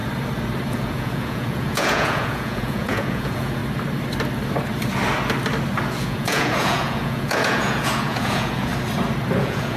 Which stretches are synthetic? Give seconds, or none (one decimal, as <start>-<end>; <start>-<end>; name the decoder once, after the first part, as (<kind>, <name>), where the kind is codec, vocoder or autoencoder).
0.7-3.6 (vocoder, Vocos); 5.9-8.7; 9.4-9.8